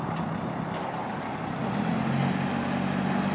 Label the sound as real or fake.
real